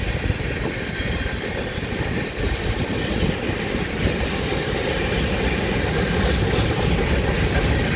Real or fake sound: real